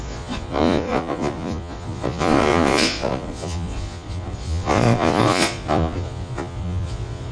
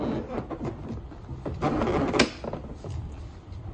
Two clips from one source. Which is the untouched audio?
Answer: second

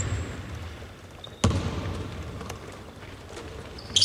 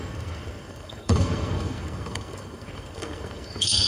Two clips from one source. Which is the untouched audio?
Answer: first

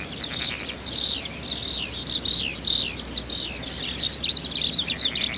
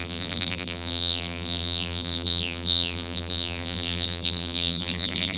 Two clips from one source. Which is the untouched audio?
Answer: first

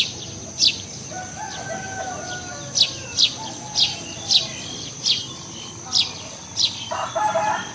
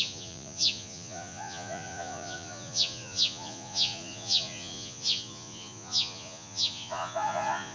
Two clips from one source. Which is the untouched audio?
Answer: first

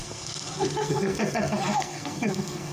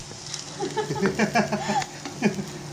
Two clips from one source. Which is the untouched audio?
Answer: second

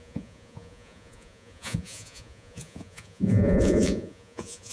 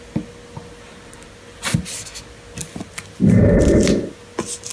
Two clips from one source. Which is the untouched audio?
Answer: second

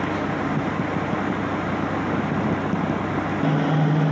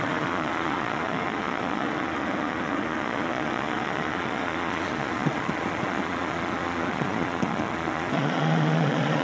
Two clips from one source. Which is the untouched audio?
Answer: first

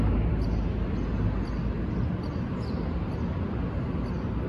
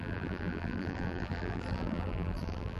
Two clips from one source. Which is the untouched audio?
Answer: first